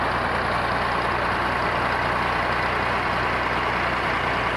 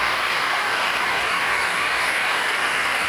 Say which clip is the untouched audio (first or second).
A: first